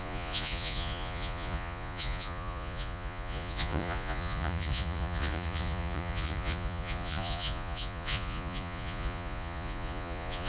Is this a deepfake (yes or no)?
yes